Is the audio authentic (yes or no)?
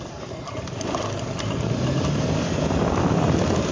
no